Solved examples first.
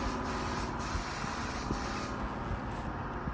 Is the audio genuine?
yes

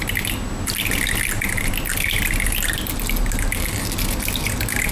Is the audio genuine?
yes